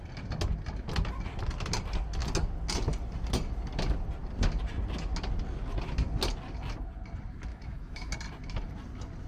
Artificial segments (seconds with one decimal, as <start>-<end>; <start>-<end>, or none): 7.5-8.1